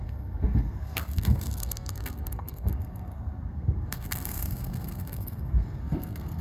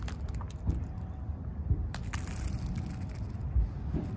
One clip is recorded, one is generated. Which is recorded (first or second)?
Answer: second